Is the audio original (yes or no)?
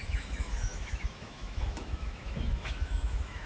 no